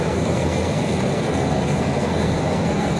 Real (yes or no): no